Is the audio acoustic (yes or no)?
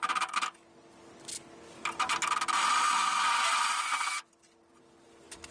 yes